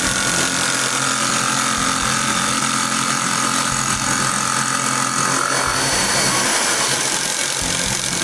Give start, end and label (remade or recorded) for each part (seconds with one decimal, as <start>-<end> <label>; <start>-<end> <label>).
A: 0.0-8.2 recorded